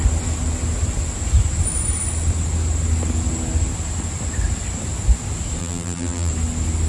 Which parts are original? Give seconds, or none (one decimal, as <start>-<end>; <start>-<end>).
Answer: 0.0-5.6; 6.3-6.9